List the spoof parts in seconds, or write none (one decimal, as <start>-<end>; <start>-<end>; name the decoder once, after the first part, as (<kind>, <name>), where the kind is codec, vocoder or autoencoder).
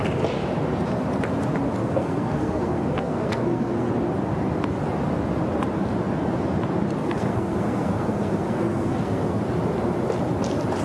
1.8-3.9 (codec, SNAC); 7.0-9.4